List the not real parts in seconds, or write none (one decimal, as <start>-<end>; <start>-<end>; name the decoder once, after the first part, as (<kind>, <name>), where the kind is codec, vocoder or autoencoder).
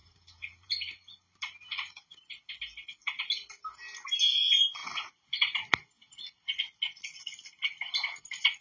0.0-2.5 (vocoder, BigVGAN v2)